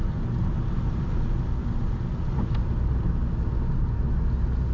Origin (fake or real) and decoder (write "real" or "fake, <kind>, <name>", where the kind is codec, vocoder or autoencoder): real